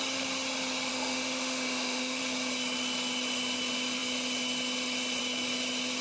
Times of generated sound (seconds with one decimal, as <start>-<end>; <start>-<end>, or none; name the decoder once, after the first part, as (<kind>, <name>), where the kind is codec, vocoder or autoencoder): 0.9-2.2 (autoencoder, DAC-VAE)